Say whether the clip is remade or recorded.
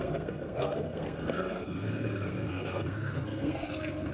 remade